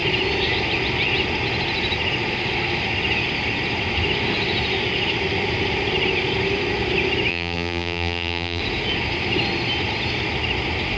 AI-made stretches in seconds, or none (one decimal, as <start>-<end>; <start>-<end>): 7.3-8.6